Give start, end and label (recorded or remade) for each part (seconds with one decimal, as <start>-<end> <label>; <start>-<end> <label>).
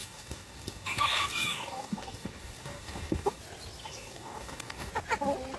0.0-3.4 remade; 3.4-3.8 recorded; 3.8-4.9 remade; 4.9-5.6 recorded